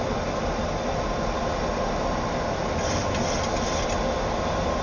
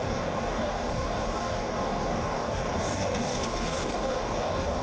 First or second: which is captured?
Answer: first